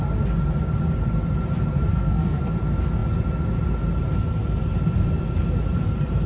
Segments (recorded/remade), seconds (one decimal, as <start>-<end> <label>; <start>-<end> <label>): 0.0-1.9 recorded; 1.9-2.4 remade; 2.4-6.3 recorded